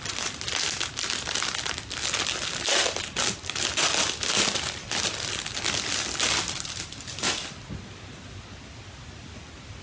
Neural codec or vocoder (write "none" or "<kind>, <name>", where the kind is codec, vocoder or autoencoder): none